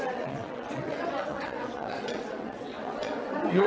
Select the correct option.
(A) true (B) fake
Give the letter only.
B